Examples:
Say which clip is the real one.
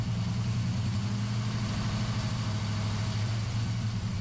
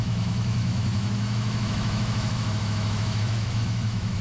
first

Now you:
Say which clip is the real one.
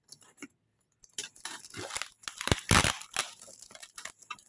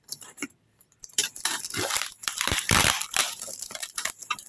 first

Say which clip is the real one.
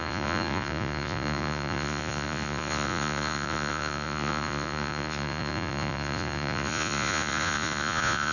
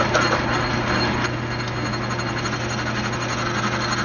second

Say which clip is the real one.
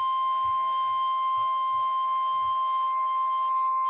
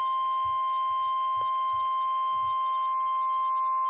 second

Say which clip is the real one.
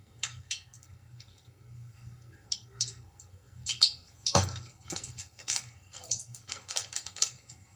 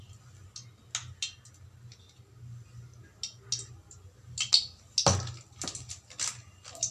second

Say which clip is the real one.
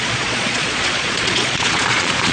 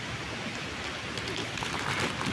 second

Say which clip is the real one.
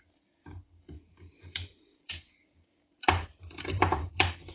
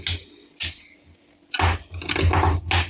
second